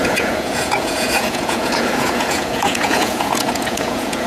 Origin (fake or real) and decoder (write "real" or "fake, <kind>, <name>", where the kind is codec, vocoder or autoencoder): fake, vocoder, Vocos